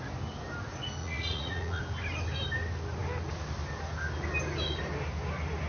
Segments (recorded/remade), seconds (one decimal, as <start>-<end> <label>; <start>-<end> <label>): 0.0-1.0 recorded; 1.0-1.8 remade; 1.8-5.7 recorded